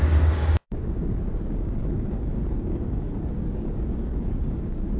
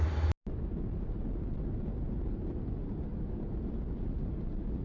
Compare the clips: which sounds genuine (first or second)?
second